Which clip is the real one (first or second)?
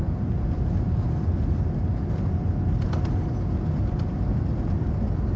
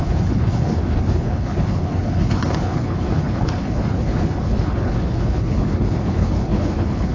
first